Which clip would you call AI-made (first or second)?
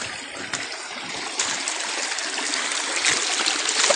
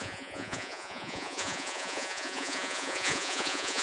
second